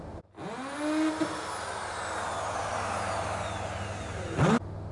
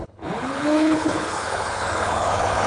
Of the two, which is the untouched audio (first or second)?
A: first